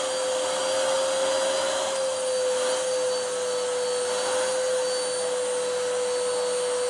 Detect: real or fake real